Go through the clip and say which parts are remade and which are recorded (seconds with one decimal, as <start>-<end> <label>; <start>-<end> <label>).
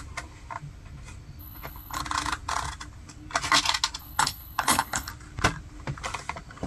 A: 0.0-1.4 recorded; 1.4-2.0 remade; 2.0-4.0 recorded; 4.0-5.1 remade; 5.1-6.7 recorded